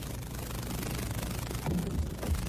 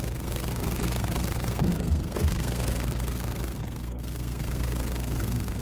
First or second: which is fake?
second